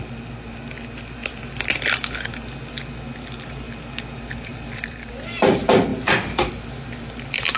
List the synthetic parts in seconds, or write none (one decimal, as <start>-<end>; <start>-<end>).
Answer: 1.2-2.0; 4.5-5.1; 5.9-6.5